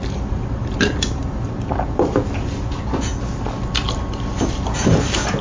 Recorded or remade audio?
remade